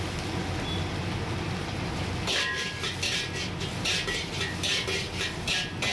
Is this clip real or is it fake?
real